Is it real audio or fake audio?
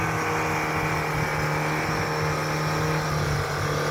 real